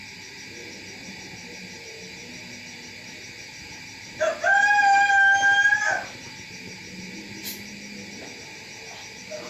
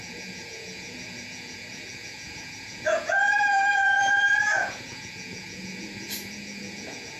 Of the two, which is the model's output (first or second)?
second